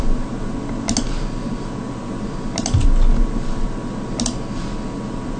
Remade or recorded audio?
recorded